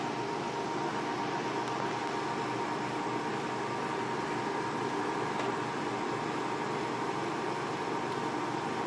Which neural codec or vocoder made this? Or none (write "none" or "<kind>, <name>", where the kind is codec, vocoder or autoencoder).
none